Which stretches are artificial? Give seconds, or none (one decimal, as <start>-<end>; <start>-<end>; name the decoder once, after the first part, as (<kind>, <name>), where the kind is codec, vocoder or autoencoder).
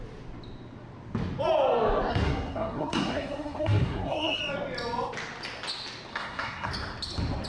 2.1-4.4 (codec, SNAC); 6.1-6.7